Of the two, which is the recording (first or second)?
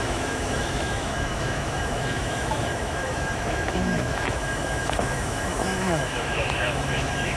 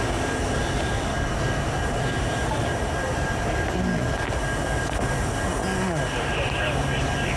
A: second